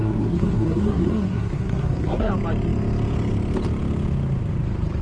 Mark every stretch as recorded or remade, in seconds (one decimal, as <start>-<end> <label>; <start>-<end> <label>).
0.0-2.3 remade; 2.3-5.0 recorded